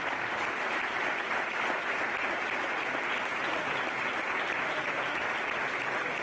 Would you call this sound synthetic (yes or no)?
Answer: no